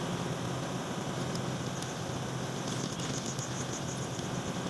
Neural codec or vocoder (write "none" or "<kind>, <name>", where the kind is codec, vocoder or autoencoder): none